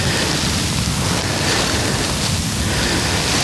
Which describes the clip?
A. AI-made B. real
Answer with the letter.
B